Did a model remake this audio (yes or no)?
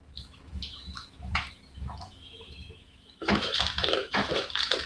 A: yes